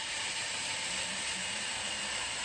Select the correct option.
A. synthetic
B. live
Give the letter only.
A